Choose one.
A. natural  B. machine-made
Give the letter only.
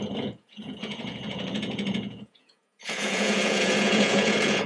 B